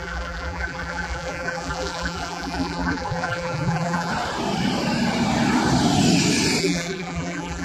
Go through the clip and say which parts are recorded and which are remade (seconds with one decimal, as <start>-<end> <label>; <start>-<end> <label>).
0.0-4.1 remade; 4.1-6.6 recorded; 6.6-7.6 remade